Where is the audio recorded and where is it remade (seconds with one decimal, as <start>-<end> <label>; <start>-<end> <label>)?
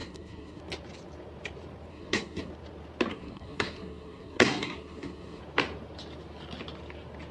0.0-0.6 remade; 0.6-1.9 recorded; 1.9-2.5 remade; 2.5-3.1 recorded; 3.1-5.4 remade; 5.4-7.3 recorded